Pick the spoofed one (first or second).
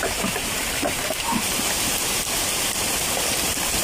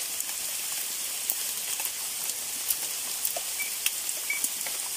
first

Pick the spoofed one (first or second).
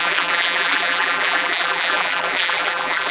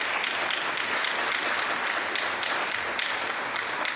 first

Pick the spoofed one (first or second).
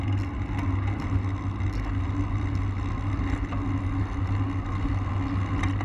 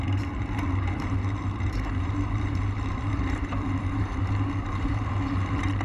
second